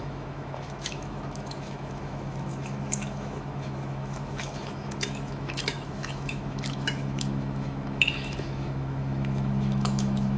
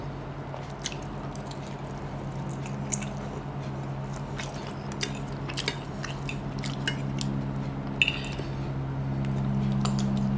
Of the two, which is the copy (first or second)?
first